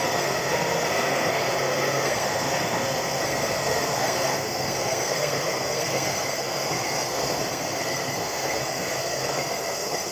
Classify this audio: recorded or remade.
remade